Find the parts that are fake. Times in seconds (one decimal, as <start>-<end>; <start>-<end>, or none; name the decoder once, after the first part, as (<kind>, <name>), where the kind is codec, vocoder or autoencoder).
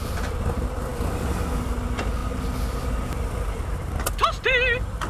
none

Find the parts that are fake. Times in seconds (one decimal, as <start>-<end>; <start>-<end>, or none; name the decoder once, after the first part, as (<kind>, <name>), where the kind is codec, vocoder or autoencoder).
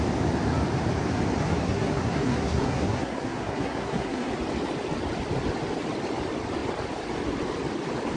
1.4-4.3 (codec, SNAC)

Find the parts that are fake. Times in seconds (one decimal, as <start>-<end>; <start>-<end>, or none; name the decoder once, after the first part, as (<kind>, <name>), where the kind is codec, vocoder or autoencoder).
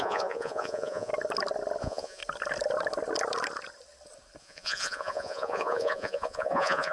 0.0-1.1 (vocoder, Vocos); 1.8-2.2; 4.4-6.9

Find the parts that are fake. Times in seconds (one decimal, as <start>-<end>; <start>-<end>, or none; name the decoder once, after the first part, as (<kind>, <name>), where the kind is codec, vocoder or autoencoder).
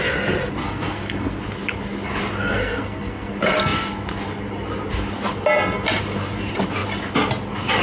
0.6-1.4 (codec, SNAC); 2.4-3.3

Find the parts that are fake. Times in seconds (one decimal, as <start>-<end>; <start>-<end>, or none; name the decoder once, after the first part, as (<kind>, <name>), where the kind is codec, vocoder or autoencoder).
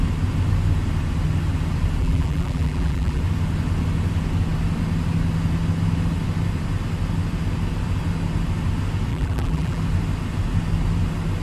2.0-3.2 (vocoder, BigVGAN v2); 9.1-9.8